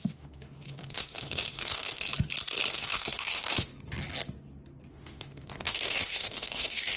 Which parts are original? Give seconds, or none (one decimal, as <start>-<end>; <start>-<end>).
2.1-2.7; 3.7-4.9